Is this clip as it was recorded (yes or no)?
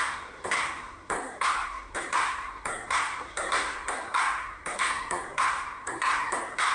no